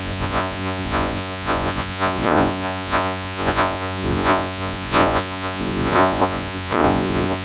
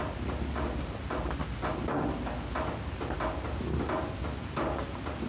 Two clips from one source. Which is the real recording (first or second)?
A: second